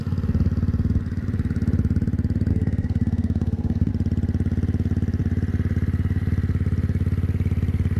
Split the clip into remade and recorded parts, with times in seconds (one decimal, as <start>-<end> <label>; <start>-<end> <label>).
0.0-2.5 recorded; 2.5-3.9 remade; 3.9-8.0 recorded